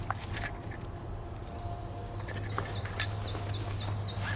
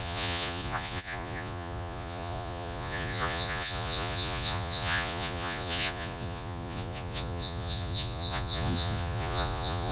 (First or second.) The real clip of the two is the first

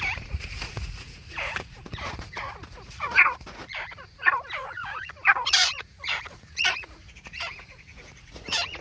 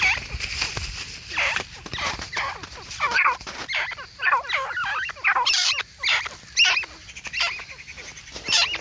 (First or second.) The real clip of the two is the second